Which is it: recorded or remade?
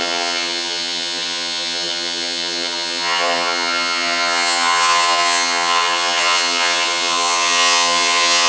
remade